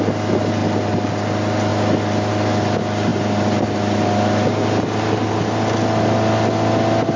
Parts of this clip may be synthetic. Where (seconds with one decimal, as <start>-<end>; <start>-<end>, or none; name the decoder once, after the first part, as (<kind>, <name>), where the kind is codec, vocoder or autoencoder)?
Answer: none